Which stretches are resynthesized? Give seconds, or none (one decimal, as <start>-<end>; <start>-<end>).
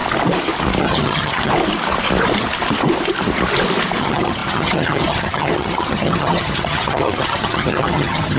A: 0.8-1.5; 4.0-8.4